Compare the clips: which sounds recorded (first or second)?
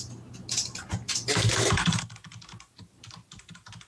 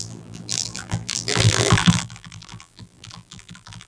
first